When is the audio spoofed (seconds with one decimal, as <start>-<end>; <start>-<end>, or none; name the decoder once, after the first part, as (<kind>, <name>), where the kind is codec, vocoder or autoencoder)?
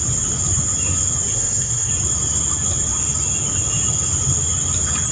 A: 1.3-1.9 (codec, SNAC)